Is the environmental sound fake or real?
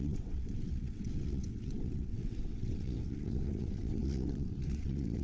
fake